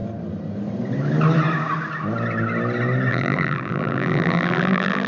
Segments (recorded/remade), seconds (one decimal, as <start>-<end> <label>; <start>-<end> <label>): 0.0-3.1 recorded; 3.1-5.1 remade